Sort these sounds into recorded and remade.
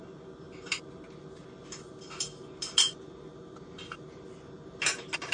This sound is recorded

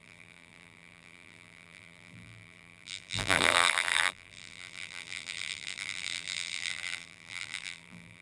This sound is remade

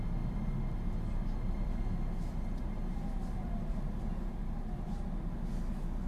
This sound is recorded